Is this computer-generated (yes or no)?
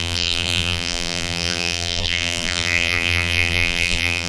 yes